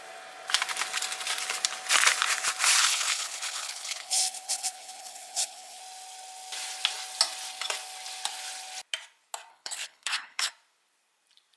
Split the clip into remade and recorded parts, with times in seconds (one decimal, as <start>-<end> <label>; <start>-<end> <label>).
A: 0.0-2.8 recorded; 2.8-5.8 remade; 5.8-9.5 recorded; 9.5-10.5 remade; 10.5-11.6 recorded